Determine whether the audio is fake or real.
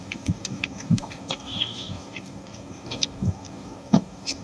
fake